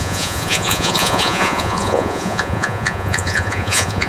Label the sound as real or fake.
fake